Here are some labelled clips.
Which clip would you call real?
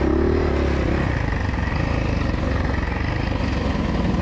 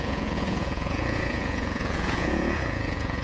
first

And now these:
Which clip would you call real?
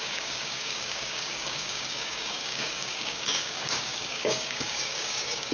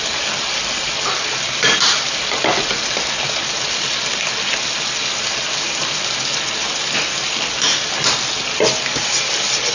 second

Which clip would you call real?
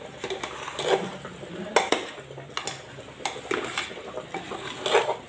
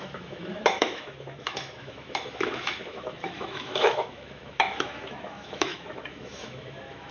first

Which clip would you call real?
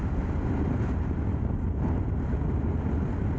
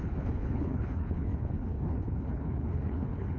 first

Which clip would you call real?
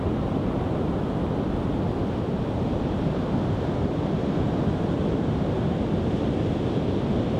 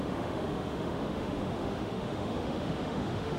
first